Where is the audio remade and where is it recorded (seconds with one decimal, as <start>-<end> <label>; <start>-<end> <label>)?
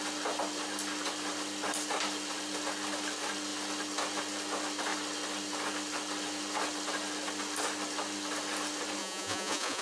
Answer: 0.0-9.0 recorded; 9.0-9.8 remade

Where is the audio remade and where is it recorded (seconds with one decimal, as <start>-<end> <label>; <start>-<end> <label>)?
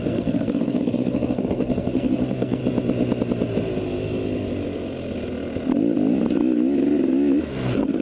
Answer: 0.0-2.6 remade; 2.6-7.4 recorded; 7.4-8.0 remade